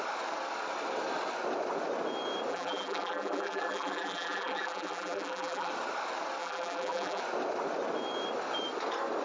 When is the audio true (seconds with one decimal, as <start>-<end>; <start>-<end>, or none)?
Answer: 0.0-2.5; 5.7-6.4; 7.2-9.2